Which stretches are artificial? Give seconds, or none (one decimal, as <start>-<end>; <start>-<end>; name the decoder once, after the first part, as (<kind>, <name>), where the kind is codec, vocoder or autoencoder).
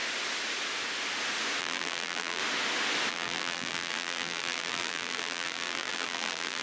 1.6-2.4 (vocoder, BigVGAN v2); 3.1-6.6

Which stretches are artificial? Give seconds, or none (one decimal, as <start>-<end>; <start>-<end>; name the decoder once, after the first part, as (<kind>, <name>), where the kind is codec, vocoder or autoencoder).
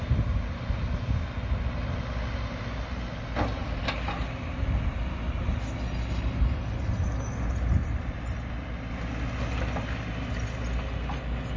none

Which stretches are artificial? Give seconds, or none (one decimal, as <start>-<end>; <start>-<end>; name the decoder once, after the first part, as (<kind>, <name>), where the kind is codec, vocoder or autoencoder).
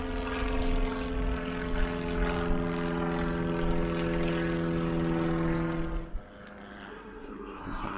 6.9-8.0 (codec, SNAC)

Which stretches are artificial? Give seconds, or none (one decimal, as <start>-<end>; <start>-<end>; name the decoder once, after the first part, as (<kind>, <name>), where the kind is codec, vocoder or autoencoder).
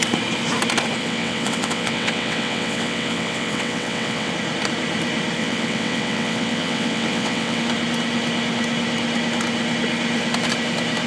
1.0-4.3 (vocoder, WaveNeXt); 5.4-7.6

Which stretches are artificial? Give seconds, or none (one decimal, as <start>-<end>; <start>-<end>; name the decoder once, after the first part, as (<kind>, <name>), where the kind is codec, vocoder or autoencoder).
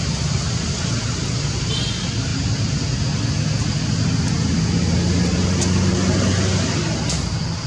none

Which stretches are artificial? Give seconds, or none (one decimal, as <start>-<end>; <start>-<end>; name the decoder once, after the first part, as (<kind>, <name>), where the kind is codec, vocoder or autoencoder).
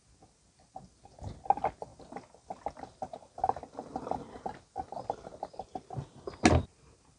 none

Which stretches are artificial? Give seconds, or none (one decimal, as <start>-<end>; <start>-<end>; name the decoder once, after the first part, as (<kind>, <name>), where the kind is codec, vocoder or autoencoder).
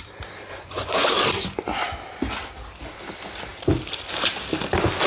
0.5-1.1 (vocoder, Vocos)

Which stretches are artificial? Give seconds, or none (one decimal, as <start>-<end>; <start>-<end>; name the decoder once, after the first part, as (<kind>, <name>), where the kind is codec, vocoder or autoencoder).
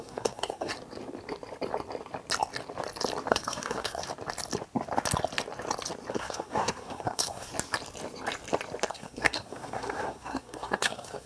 0.0-0.7 (codec, SNAC); 3.3-4.0; 6.1-7.5; 8.9-11.3